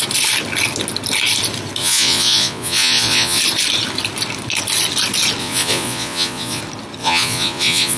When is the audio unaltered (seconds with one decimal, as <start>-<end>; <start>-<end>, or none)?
0.0-1.8; 3.4-5.4; 6.6-7.0